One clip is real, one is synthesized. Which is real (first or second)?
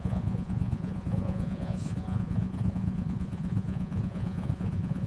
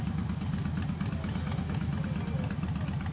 second